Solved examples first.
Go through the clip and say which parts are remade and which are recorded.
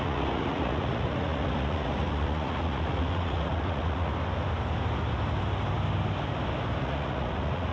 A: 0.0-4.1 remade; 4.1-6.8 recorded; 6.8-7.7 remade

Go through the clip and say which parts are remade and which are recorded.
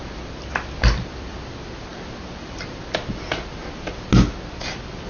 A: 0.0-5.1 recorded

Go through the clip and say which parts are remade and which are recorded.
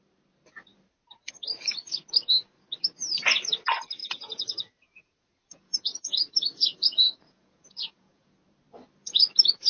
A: 0.0-4.0 recorded; 4.0-8.3 remade; 8.3-9.7 recorded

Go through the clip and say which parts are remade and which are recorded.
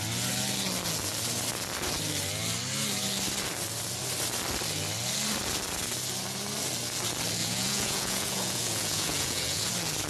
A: 0.0-7.4 recorded; 7.4-9.7 remade; 9.7-10.1 recorded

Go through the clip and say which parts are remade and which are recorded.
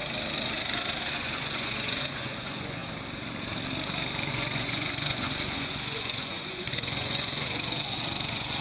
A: 0.0-1.0 recorded; 1.0-2.8 remade; 2.8-4.3 recorded; 4.3-8.6 remade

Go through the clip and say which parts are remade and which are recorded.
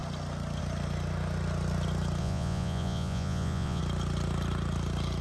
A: 0.0-2.2 recorded; 2.2-3.8 remade; 3.8-5.2 recorded